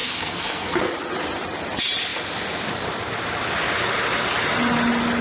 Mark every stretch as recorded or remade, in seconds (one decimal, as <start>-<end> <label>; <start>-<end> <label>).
0.0-0.9 remade; 0.9-5.2 recorded